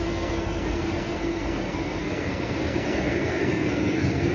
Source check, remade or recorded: remade